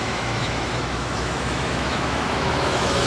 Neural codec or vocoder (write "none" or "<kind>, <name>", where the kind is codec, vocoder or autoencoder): autoencoder, DAC-VAE